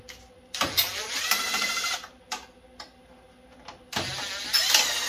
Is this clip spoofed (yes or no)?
no